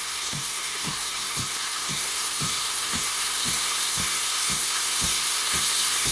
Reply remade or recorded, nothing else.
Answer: remade